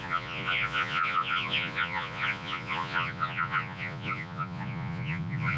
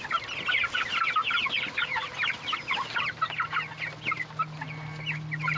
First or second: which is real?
second